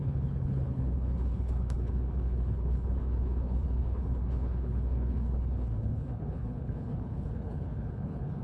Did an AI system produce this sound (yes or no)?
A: yes